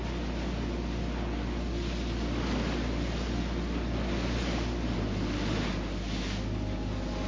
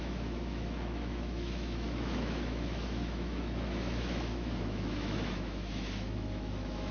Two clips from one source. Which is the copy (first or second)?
second